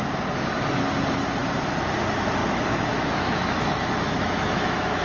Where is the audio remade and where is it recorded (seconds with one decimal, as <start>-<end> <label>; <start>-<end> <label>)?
0.0-2.4 recorded; 2.4-5.0 remade